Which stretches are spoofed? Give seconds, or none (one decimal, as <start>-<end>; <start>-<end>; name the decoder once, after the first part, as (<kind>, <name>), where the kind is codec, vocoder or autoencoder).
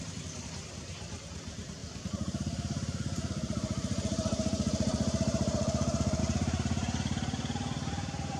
0.0-8.4 (vocoder, BigVGAN v2)